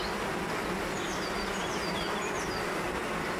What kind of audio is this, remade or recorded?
recorded